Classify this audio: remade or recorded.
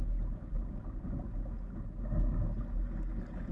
recorded